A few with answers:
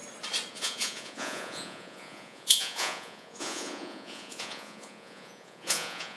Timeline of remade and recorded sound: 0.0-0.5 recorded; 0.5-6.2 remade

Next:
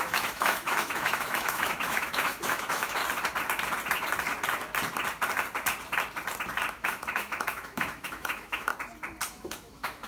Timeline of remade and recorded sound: 0.0-3.0 remade; 3.0-6.7 recorded; 6.7-8.7 remade; 8.7-9.3 recorded; 9.3-10.1 remade

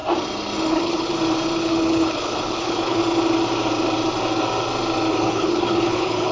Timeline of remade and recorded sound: 0.0-0.7 recorded; 0.7-1.1 remade; 1.1-1.6 recorded; 1.6-3.0 remade; 3.0-5.2 recorded; 5.2-6.3 remade